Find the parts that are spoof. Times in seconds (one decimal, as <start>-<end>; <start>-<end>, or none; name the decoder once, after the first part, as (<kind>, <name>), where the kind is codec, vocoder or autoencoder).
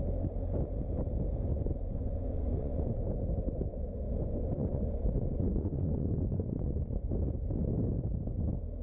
1.5-2.9 (vocoder, Vocos); 3.7-7.1